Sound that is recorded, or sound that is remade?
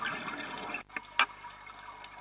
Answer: recorded